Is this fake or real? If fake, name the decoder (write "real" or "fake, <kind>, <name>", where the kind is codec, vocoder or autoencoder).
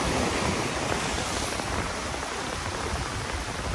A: real